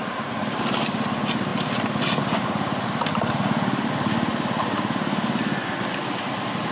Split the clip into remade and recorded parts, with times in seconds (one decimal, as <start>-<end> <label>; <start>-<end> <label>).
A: 0.0-4.3 recorded; 4.3-5.8 remade; 5.8-6.7 recorded